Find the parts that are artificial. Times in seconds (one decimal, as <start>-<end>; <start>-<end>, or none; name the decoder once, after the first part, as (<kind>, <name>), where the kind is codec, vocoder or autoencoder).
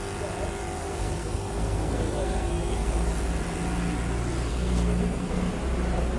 0.8-3.1 (codec, SNAC); 4.5-5.5